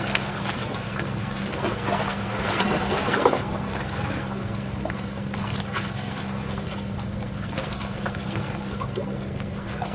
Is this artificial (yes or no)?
yes